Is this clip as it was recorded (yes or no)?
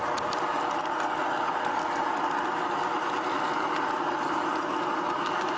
yes